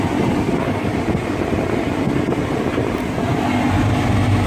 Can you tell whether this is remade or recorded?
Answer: recorded